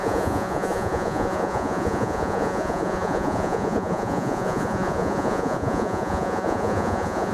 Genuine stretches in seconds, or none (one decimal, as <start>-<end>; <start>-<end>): none